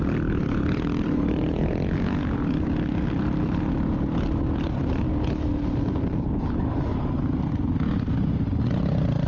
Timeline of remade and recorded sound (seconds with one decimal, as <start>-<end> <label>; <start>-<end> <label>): 0.0-9.3 recorded